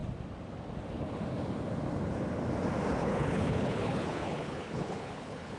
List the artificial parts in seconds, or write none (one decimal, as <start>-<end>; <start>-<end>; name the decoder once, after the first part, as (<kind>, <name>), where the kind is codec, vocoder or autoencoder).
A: 3.0-5.6 (codec, HILCodec)

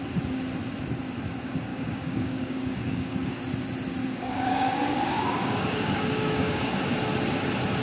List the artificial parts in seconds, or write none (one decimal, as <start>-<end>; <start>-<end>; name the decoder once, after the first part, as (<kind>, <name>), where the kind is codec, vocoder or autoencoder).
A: 1.7-3.4 (codec, DAC); 4.0-6.8